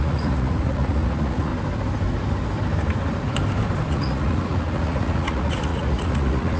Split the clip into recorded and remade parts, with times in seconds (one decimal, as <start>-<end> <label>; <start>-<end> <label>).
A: 0.0-1.5 remade; 1.5-3.9 recorded; 3.9-6.6 remade